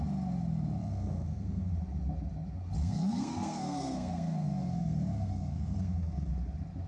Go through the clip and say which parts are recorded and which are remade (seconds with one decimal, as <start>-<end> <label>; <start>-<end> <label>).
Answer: 0.0-0.8 recorded; 0.8-1.7 remade; 1.7-2.8 recorded; 2.8-6.3 remade; 6.3-6.9 recorded